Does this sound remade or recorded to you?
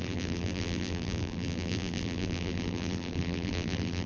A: remade